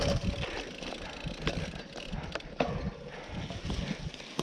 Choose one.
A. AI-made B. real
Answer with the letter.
B